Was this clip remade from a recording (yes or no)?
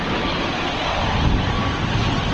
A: no